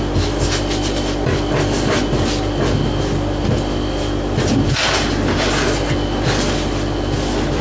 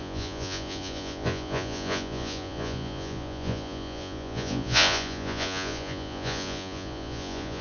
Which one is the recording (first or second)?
first